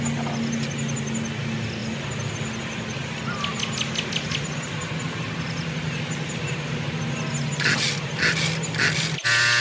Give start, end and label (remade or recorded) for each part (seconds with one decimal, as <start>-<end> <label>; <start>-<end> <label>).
0.0-9.6 recorded